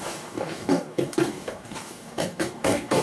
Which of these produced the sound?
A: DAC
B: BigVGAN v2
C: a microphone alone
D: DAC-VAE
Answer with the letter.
A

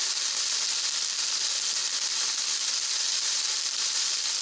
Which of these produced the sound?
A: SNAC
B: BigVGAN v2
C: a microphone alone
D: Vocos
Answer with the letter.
B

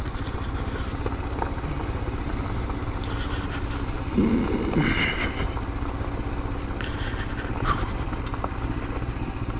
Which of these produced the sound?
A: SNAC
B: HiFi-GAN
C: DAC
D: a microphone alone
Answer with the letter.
D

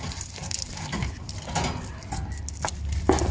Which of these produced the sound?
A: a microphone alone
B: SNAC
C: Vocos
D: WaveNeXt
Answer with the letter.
A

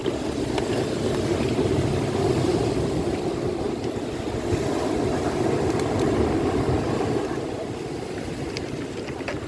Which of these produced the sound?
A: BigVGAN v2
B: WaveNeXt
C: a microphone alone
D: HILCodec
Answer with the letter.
C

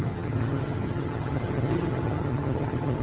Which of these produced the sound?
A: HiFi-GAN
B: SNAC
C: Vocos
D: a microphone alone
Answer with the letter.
A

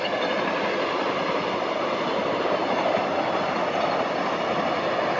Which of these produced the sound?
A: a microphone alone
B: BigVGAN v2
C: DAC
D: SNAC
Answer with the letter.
A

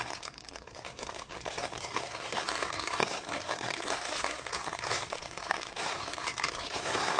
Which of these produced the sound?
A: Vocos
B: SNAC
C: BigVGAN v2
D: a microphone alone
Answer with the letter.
B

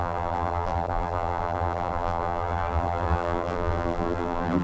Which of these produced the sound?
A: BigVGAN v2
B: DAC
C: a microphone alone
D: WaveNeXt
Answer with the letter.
A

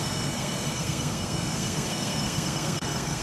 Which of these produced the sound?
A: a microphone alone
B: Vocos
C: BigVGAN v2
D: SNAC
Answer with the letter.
D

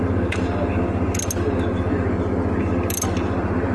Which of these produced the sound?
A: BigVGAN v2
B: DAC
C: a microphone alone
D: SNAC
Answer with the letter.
C